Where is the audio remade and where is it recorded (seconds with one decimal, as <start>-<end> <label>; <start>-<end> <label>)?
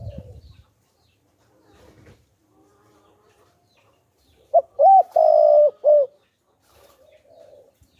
0.0-5.4 remade; 5.4-6.6 recorded; 6.6-8.0 remade